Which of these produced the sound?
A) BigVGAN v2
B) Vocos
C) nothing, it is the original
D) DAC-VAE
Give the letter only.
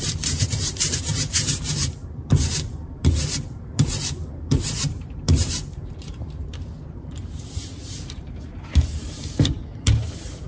A